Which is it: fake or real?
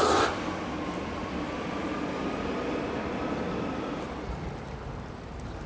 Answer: real